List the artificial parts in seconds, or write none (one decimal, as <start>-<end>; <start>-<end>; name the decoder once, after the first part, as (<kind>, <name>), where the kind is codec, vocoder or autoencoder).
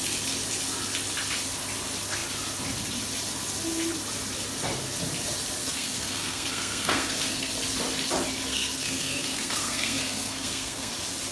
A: 5.6-7.5 (codec, SNAC); 8.5-10.9